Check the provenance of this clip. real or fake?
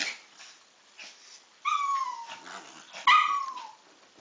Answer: real